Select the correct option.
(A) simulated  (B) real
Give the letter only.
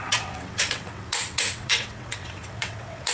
A